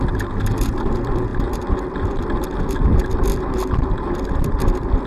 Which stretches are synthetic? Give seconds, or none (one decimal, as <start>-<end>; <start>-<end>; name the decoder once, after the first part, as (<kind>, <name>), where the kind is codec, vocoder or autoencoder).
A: none